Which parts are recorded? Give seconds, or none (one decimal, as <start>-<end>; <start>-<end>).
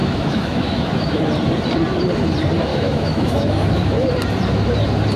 1.2-2.7; 4.1-5.2